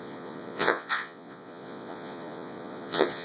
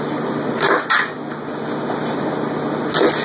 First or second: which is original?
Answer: second